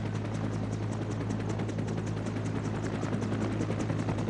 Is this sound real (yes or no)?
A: yes